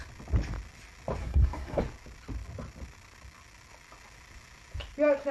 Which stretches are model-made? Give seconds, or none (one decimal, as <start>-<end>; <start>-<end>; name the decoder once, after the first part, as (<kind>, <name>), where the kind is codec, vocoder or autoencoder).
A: 1.2-1.8 (codec, SNAC)